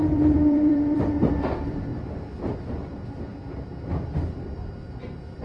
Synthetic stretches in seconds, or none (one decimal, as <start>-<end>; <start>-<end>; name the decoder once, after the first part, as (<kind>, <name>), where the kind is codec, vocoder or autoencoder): 0.0-3.3 (vocoder, BigVGAN v2); 3.9-4.6